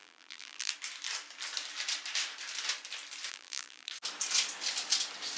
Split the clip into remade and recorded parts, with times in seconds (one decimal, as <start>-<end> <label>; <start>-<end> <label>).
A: 0.0-0.7 remade; 0.7-3.3 recorded; 3.3-3.9 remade; 3.9-5.4 recorded